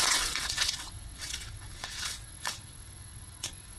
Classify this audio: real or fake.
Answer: fake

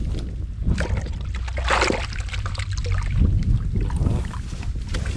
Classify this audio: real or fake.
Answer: real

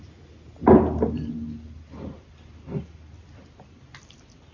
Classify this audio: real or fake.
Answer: real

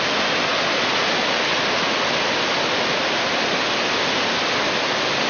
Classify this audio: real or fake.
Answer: real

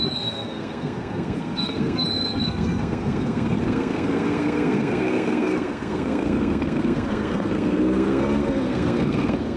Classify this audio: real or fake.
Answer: fake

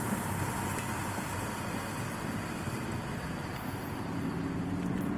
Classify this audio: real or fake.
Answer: real